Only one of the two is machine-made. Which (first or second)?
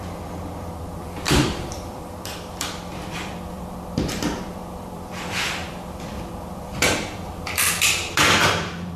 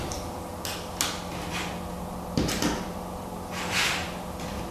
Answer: first